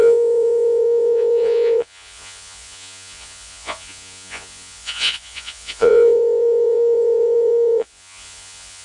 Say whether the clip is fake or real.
fake